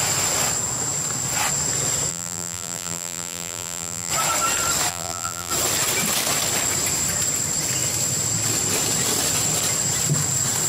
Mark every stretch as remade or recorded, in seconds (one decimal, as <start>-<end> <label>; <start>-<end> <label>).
0.0-2.1 recorded; 2.1-4.1 remade; 4.1-4.9 recorded; 4.9-5.5 remade; 5.5-10.7 recorded